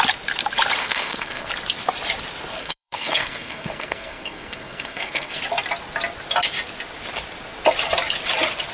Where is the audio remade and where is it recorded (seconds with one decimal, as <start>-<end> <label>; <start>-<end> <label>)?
0.0-0.8 recorded; 0.8-1.5 remade; 1.5-2.6 recorded; 2.6-5.4 remade; 5.4-8.7 recorded